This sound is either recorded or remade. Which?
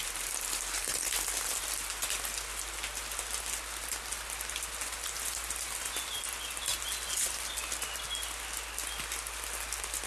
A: recorded